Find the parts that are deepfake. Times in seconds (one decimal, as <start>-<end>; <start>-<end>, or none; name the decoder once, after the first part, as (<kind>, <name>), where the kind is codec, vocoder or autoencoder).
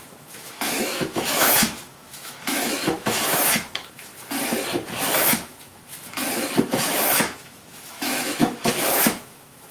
0.0-4.1 (autoencoder, DAC-VAE); 5.3-9.7